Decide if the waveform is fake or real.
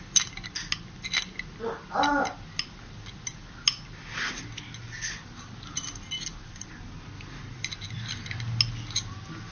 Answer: real